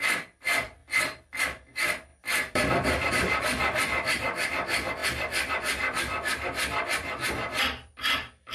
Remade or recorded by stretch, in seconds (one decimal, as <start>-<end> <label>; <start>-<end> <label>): 0.0-0.8 remade; 0.8-1.4 recorded; 1.4-8.5 remade